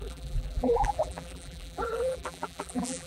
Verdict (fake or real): fake